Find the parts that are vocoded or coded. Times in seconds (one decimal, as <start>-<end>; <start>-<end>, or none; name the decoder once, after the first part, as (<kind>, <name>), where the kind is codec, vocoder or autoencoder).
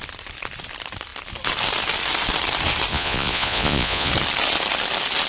2.9-4.1 (vocoder, Vocos)